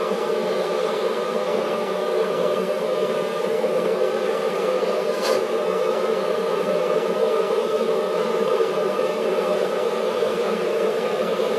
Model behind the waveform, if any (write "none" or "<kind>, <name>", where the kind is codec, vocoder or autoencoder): codec, SNAC